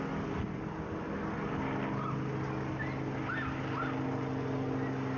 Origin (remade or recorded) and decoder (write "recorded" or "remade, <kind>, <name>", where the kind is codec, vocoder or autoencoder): recorded